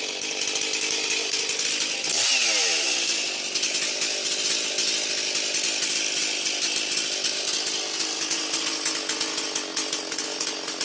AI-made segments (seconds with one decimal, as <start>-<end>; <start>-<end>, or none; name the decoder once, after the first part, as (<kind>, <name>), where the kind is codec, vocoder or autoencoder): none